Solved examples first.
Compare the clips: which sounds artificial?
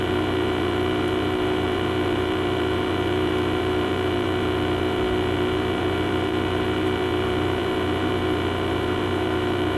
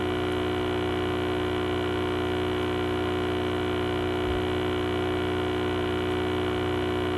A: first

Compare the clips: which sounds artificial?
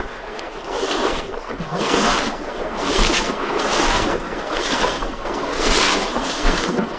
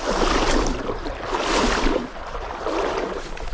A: first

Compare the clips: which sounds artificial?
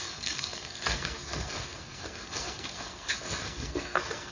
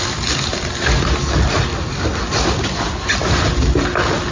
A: first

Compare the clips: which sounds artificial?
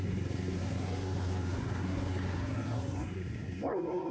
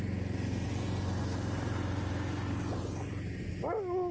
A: first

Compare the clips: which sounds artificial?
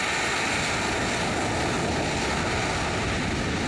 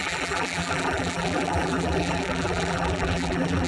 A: second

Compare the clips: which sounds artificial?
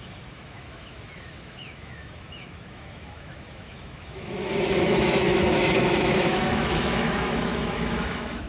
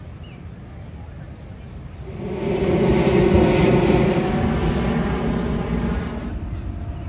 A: first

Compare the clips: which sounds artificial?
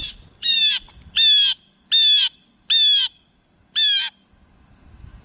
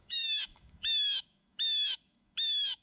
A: second